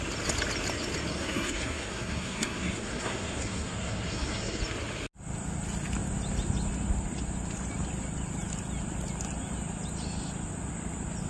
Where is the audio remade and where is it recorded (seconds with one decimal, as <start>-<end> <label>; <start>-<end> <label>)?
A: 0.0-1.1 recorded; 1.1-4.6 remade; 4.6-11.3 recorded